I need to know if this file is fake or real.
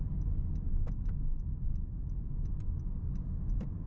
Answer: real